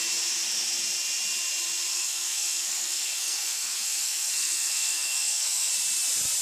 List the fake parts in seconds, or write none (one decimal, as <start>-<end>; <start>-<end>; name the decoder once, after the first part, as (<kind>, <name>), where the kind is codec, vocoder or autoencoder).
1.9-5.7 (codec, SNAC)